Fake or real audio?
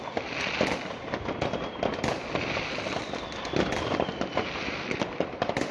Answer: real